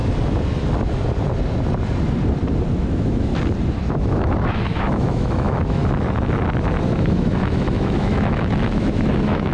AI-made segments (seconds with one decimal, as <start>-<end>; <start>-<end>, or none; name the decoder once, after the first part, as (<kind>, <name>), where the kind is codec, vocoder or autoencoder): 2.8-3.3 (autoencoder, DAC-VAE); 3.9-5.8; 7.0-9.5